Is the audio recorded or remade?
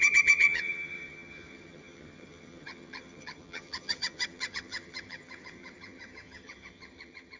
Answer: remade